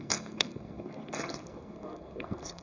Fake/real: fake